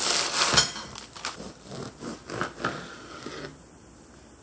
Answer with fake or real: real